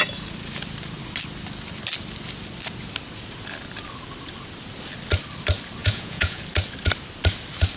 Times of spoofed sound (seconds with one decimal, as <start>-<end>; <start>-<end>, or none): 5.8-6.4